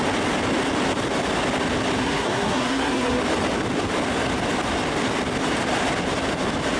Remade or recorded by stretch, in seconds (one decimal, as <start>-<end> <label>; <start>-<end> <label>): 0.0-2.0 recorded; 2.0-3.2 remade; 3.2-6.8 recorded